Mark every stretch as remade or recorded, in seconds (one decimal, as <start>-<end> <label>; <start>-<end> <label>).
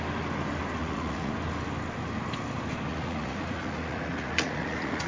0.0-0.8 recorded; 0.8-1.3 remade; 1.3-2.9 recorded; 2.9-5.1 remade